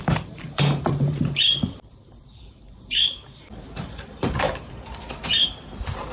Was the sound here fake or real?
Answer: fake